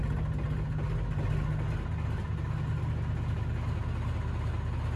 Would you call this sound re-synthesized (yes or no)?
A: no